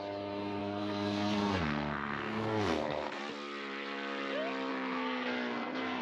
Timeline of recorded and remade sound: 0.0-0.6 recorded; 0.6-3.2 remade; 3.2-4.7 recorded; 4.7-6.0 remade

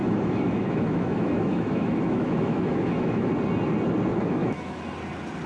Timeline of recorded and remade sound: 0.0-3.3 remade; 3.3-4.1 recorded; 4.1-4.8 remade; 4.8-5.5 recorded

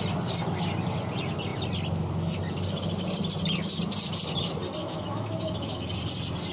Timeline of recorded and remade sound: 0.0-4.8 recorded; 4.8-5.9 remade; 5.9-6.5 recorded

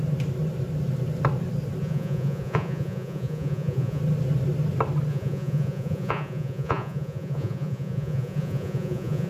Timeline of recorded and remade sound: 0.0-1.8 recorded; 1.8-4.0 remade; 4.0-5.1 recorded; 5.1-9.3 remade

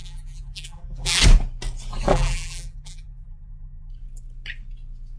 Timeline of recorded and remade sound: 0.0-1.2 remade; 1.2-2.1 recorded; 2.1-3.9 remade; 3.9-5.2 recorded

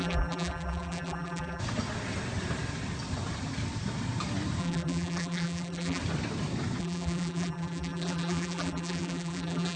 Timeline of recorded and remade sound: 0.0-1.6 remade; 1.6-4.6 recorded; 4.6-6.0 remade; 6.0-6.8 recorded; 6.8-9.8 remade

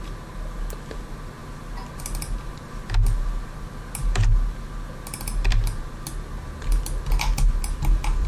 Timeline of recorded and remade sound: 0.0-8.3 recorded